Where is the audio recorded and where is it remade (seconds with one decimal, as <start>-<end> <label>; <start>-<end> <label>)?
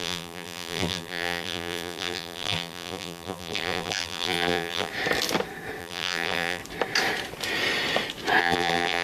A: 0.0-4.9 remade; 4.9-5.8 recorded; 5.8-6.6 remade; 6.6-8.4 recorded; 8.4-9.0 remade